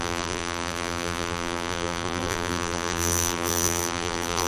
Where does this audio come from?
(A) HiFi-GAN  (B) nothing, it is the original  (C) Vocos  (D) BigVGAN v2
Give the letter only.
D